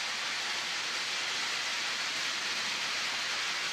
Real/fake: real